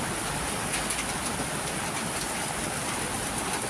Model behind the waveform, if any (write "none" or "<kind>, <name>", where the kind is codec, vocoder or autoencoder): none